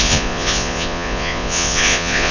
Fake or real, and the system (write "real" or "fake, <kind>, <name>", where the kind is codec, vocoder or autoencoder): fake, vocoder, Vocos